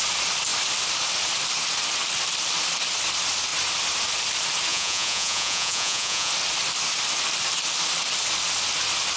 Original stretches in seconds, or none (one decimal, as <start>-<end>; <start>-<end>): 0.0-4.7; 6.3-9.2